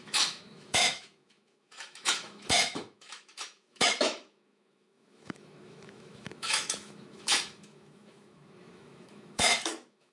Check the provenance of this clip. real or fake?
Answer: fake